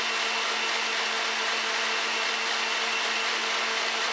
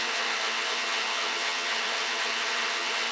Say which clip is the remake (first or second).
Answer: second